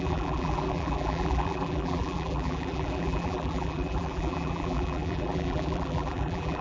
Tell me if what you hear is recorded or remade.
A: remade